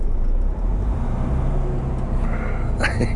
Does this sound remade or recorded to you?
recorded